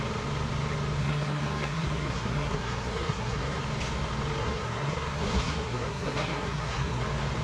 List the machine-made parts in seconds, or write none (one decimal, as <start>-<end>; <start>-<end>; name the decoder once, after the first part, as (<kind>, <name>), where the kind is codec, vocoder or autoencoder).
1.0-3.6 (codec, SNAC); 4.4-7.0